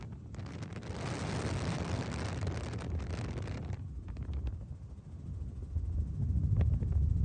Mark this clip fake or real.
real